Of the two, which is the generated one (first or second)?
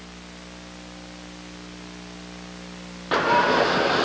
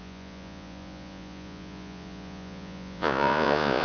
second